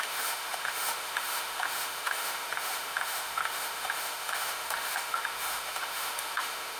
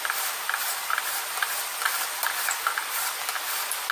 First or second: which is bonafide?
second